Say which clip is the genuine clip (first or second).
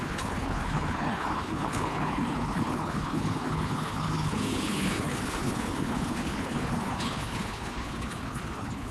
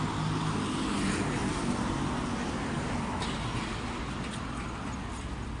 second